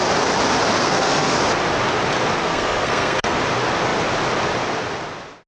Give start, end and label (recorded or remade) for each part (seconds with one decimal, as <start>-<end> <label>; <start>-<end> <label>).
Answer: 0.0-0.8 recorded; 0.8-1.4 remade; 1.4-2.4 recorded; 2.4-3.4 remade; 3.4-5.5 recorded